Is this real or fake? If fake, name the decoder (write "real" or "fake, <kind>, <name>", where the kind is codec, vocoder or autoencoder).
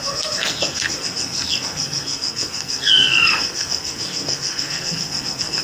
fake, codec, SNAC